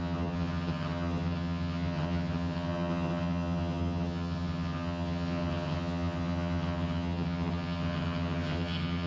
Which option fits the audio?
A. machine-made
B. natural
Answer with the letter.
A